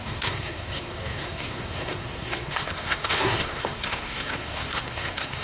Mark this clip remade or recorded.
remade